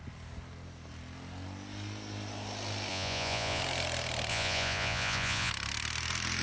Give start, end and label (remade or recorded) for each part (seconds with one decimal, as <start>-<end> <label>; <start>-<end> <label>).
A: 0.0-2.9 recorded; 2.9-3.6 remade; 3.6-4.3 recorded; 4.3-5.5 remade; 5.5-6.4 recorded